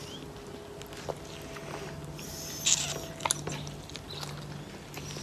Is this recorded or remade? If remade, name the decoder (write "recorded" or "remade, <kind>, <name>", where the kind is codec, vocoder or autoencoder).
recorded